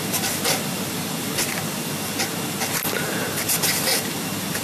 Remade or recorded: recorded